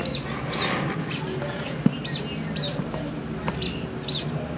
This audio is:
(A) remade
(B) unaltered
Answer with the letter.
B